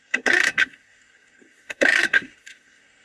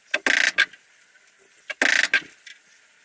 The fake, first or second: first